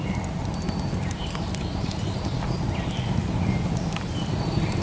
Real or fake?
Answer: real